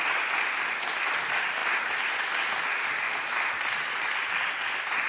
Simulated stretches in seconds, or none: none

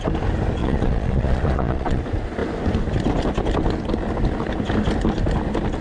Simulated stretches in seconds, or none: 0.6-2.0 (vocoder, Vocos)

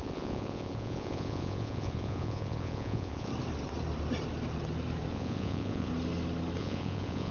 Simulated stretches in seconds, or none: 0.0-3.3 (vocoder, Vocos); 5.1-5.9; 6.6-7.3

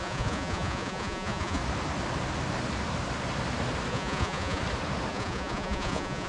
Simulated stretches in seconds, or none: 0.0-1.6 (vocoder, Vocos); 3.9-4.6; 5.1-6.3

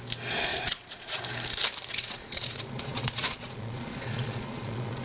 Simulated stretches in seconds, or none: 0.5-1.2 (vocoder, Vocos); 1.9-5.0